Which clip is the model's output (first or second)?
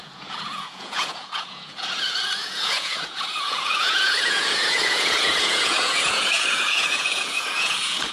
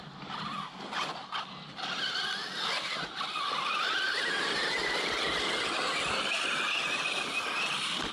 first